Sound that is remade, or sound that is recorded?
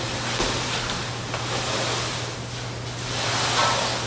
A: recorded